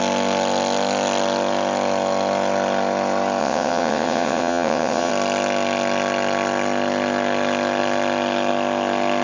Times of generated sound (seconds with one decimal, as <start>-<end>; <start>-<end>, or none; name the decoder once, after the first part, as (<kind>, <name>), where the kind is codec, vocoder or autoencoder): 3.4-5.1 (vocoder, WaveNeXt)